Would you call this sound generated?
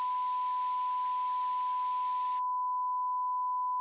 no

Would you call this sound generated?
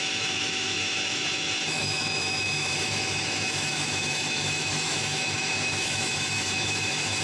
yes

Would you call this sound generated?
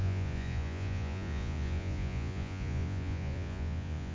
yes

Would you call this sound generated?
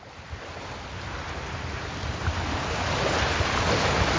no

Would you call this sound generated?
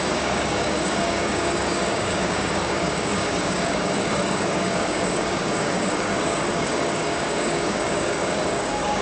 yes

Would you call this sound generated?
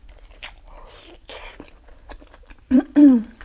yes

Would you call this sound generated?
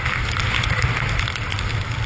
no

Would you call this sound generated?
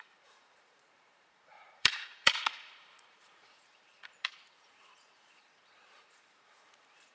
yes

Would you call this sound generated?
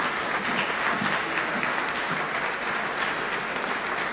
no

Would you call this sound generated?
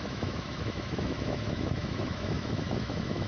yes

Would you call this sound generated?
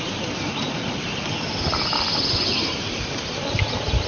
no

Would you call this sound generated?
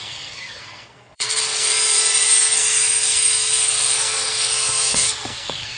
yes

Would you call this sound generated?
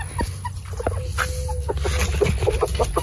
no